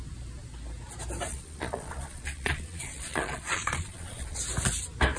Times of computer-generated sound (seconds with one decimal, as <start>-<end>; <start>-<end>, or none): 1.3-4.4